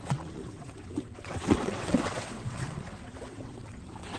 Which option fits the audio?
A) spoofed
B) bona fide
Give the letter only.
A